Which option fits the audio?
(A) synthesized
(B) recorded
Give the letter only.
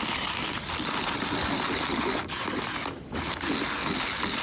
B